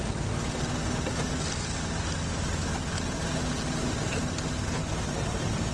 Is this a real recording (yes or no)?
yes